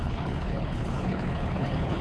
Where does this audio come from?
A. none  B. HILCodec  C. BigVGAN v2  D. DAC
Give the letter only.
B